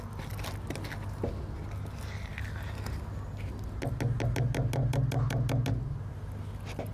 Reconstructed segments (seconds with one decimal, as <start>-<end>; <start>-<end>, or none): none